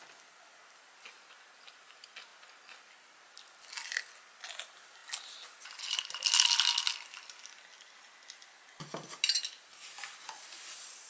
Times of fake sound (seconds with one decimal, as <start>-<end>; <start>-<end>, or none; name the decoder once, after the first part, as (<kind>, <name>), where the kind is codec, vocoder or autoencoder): none